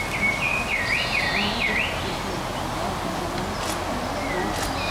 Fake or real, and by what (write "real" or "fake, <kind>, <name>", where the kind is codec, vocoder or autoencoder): real